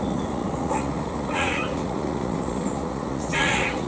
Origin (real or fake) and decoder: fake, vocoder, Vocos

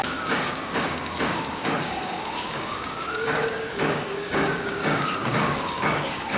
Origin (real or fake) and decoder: fake, codec, DAC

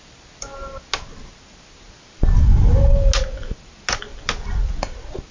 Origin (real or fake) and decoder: real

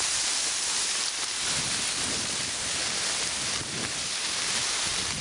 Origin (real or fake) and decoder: real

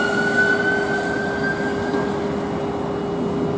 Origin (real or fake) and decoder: real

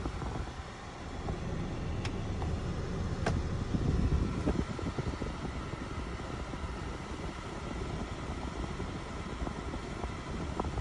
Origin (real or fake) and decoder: real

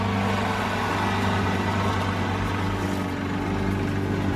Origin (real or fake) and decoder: real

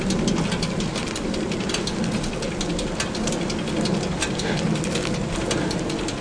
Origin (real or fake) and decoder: real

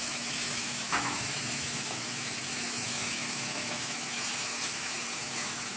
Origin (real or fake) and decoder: fake, autoencoder, DAC-VAE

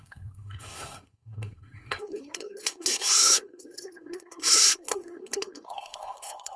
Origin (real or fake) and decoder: fake, codec, SNAC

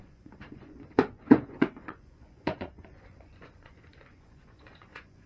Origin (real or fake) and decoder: fake, vocoder, Vocos